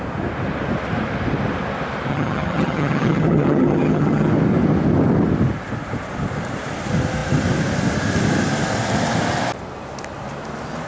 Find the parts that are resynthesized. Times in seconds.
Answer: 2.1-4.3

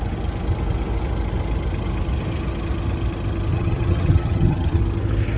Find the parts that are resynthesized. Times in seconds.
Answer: 3.5-4.8